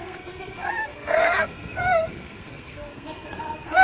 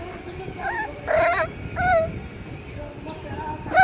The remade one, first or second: first